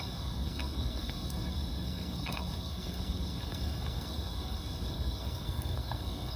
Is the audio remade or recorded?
remade